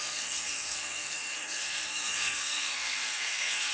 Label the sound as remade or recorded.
remade